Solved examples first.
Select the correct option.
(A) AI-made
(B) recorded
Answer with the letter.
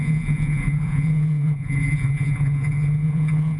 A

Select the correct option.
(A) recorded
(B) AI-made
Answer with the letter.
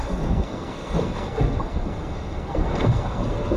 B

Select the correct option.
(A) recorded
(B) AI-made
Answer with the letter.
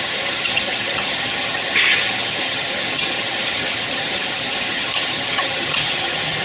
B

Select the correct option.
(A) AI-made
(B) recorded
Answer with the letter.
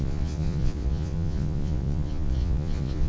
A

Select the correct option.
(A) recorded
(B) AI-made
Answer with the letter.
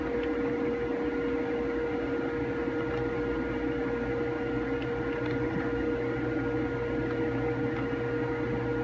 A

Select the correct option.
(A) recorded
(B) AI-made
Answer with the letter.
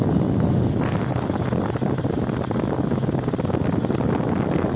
A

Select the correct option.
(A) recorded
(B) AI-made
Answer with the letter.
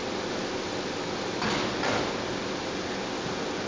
A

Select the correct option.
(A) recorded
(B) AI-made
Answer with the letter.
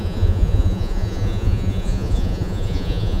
B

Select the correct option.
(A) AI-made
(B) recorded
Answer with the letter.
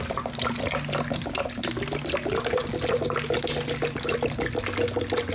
B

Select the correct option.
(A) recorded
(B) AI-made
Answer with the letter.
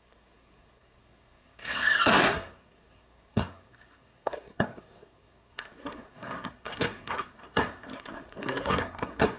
B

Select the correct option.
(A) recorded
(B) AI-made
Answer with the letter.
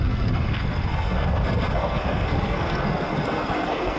B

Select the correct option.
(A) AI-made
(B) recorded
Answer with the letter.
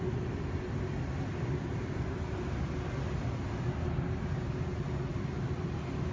B